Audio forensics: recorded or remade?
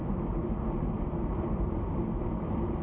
remade